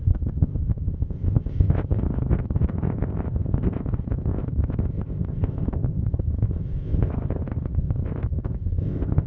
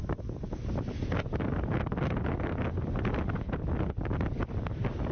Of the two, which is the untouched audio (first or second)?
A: second